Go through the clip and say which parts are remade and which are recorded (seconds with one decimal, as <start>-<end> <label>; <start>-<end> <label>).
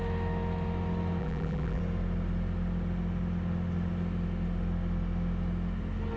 0.0-1.2 recorded; 1.2-1.8 remade; 1.8-6.2 recorded